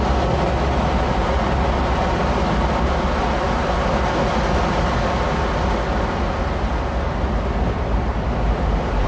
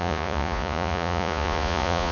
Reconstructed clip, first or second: second